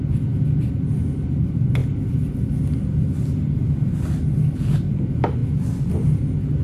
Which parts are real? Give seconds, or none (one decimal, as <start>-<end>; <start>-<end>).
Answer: 0.0-6.6